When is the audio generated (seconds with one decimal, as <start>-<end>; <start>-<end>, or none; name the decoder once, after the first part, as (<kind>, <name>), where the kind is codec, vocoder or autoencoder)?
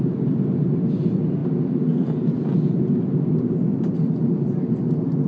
none